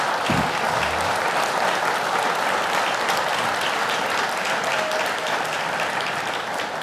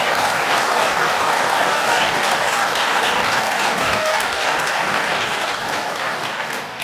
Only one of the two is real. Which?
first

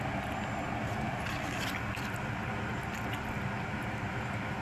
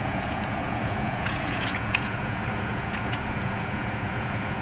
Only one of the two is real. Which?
first